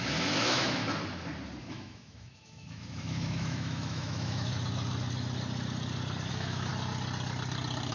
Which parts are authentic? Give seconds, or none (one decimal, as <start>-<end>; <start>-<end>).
0.8-1.6; 4.5-6.3; 6.7-7.9